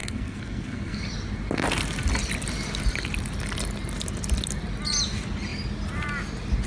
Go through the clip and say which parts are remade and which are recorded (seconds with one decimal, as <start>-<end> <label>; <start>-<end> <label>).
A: 0.0-1.0 remade; 1.0-6.7 recorded